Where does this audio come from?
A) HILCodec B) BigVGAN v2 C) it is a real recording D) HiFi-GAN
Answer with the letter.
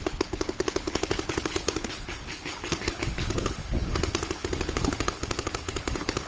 A